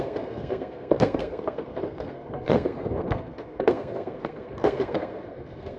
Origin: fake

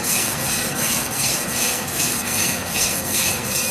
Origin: fake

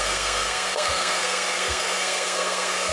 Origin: fake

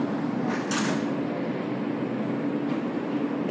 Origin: real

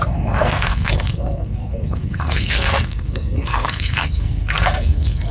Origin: fake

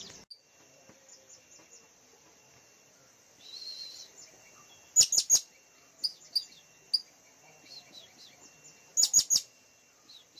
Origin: real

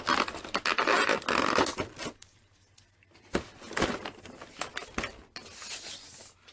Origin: real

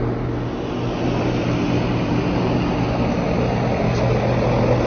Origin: real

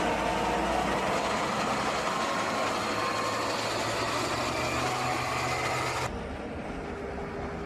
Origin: real